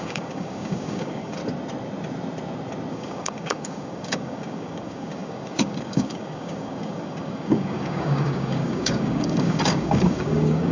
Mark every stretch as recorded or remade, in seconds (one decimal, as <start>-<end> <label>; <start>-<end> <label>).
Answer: 0.0-1.4 remade; 1.4-2.9 recorded; 2.9-10.7 remade